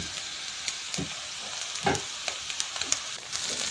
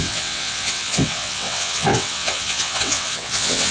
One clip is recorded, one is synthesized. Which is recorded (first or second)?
first